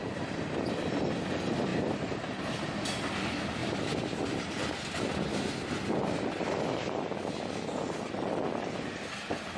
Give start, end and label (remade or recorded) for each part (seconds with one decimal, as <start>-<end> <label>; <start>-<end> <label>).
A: 0.0-3.6 remade; 3.6-4.2 recorded; 4.2-9.6 remade